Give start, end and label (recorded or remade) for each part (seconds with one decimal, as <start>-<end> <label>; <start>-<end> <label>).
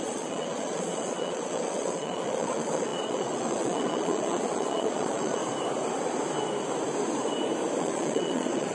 0.0-5.4 remade; 5.4-7.8 recorded; 7.8-8.7 remade